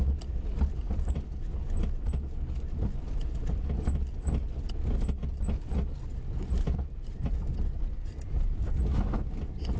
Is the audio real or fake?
real